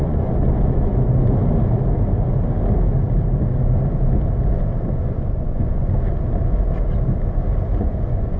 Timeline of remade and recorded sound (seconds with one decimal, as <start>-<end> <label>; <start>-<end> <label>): 0.0-0.9 remade; 0.9-4.9 recorded; 4.9-5.8 remade; 5.8-7.8 recorded; 7.8-8.4 remade

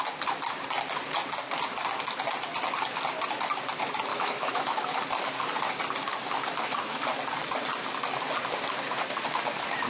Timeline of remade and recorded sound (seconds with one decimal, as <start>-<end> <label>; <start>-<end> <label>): 0.0-4.1 recorded; 4.1-5.0 remade; 5.0-9.9 recorded

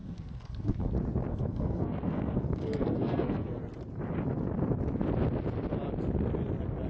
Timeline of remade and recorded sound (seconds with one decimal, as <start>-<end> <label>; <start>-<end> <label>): 0.0-0.9 remade; 0.9-1.3 recorded; 1.3-3.6 remade; 3.6-6.9 recorded

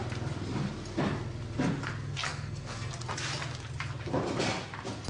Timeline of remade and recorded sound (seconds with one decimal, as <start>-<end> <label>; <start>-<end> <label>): 0.0-2.3 recorded; 2.3-2.9 remade; 2.9-5.1 recorded

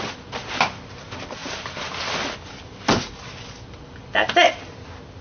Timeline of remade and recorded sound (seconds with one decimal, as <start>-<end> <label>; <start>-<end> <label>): 0.0-5.2 recorded

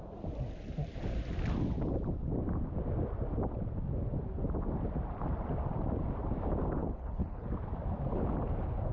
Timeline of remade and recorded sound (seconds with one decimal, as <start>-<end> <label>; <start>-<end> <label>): 0.0-6.8 recorded; 6.8-7.5 remade; 7.5-8.9 recorded

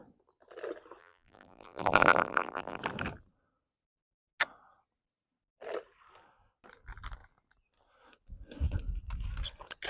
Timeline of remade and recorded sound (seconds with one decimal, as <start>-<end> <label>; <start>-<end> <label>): 0.0-1.0 recorded; 1.0-2.8 remade; 2.8-9.9 recorded

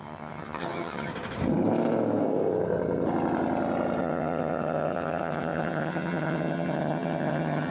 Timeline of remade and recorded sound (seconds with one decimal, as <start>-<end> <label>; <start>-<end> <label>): 0.0-1.1 remade; 1.1-4.0 recorded; 4.0-7.7 remade